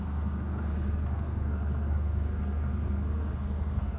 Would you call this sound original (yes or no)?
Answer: no